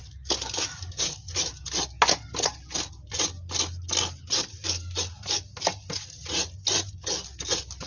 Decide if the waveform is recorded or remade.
recorded